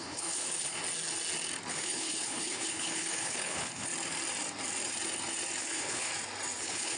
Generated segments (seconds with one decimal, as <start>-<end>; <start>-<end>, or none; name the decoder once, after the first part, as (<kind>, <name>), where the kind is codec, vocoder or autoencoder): 0.0-0.8 (codec, HILCodec); 1.7-3.9; 5.6-6.1; 6.6-7.0